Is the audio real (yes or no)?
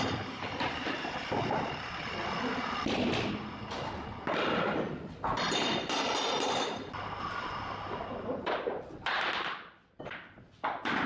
yes